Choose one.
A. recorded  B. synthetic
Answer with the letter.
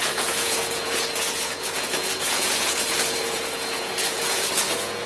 B